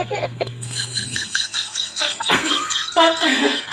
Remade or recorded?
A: remade